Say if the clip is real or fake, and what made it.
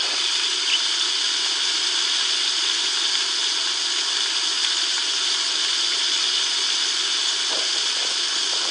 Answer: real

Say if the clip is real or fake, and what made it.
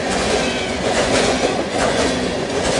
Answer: fake, vocoder, Vocos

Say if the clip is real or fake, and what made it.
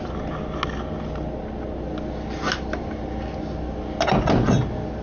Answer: real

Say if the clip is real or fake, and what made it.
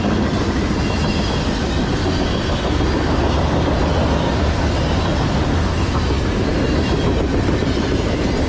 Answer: real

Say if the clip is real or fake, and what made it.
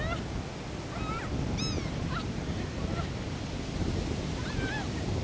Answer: real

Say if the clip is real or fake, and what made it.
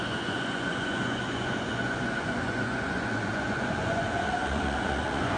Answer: fake, vocoder, Vocos